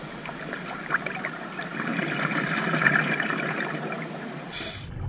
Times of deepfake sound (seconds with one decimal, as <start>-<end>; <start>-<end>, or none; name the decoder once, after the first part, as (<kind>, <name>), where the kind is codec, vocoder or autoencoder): none

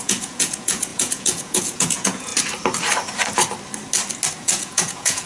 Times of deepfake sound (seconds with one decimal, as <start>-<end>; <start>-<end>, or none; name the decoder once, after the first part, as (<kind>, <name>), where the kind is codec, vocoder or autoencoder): 0.0-2.3 (vocoder, Vocos); 4.3-5.3

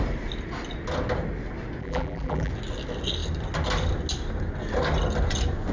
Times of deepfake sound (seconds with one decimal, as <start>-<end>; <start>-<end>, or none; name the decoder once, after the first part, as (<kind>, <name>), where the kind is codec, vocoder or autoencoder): 1.8-2.5 (vocoder, BigVGAN v2)

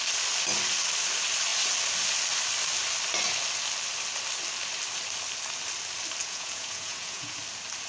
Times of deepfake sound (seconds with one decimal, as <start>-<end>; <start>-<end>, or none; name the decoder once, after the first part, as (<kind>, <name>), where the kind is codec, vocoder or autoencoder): 6.2-7.4 (vocoder, Vocos)

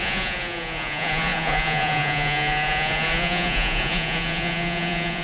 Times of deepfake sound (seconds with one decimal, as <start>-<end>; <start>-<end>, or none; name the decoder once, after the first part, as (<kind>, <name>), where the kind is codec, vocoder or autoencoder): 0.0-5.2 (vocoder, Vocos)

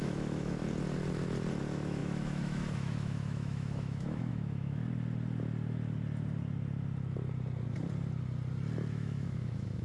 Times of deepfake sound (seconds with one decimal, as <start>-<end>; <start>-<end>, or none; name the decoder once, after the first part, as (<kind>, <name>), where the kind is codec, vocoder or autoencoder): 0.0-0.6 (autoencoder, DAC-VAE); 1.6-4.8; 8.9-9.8

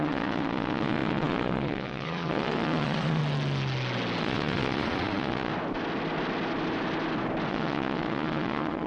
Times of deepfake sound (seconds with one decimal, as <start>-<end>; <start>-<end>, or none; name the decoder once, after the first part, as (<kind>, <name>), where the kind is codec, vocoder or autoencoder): 0.0-3.2 (vocoder, Vocos); 4.2-5.5; 7.5-8.9

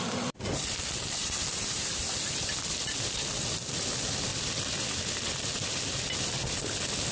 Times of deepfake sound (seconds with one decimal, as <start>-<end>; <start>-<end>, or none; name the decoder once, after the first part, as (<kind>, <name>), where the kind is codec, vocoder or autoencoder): 1.2-2.4 (vocoder, BigVGAN v2)